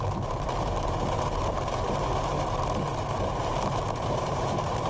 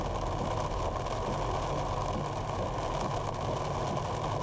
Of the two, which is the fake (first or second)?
first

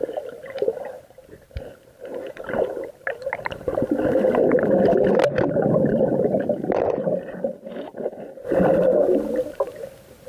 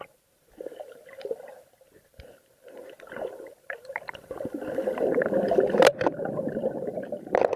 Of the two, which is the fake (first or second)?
second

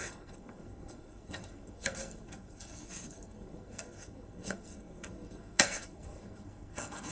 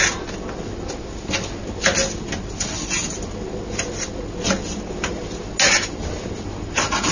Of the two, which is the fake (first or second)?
first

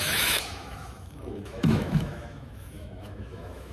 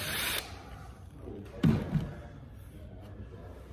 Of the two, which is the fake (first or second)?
first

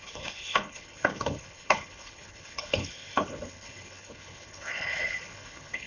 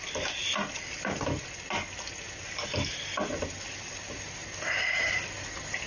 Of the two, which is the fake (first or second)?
first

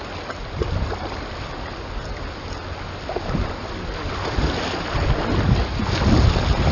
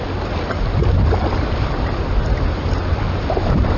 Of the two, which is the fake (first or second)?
second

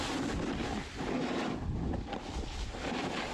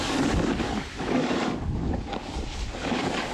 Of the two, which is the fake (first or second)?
second